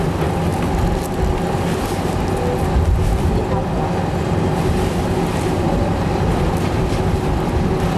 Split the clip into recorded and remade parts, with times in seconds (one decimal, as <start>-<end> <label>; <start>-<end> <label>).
0.0-8.0 recorded